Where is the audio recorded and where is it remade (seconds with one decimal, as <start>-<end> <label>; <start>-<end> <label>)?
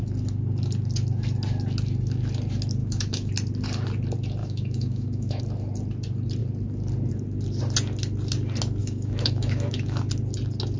0.0-2.8 recorded; 2.8-3.3 remade; 3.3-4.4 recorded; 4.4-5.4 remade; 5.4-8.8 recorded; 8.8-10.1 remade; 10.1-10.8 recorded